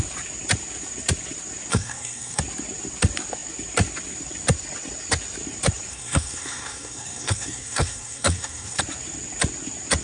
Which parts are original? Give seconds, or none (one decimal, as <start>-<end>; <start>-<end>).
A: 0.0-1.7; 2.4-5.9; 8.8-10.0